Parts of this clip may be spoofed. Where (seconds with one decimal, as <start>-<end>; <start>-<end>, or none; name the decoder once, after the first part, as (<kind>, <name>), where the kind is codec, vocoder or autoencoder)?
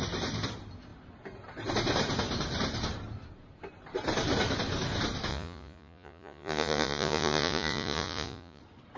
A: 5.3-8.6 (vocoder, Vocos)